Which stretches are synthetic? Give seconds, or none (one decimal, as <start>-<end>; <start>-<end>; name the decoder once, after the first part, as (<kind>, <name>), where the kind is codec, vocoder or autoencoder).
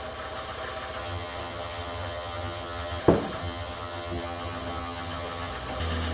1.0-3.0 (vocoder, HiFi-GAN); 3.4-5.5